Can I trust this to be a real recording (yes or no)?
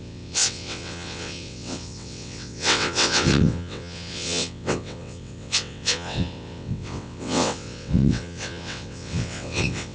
no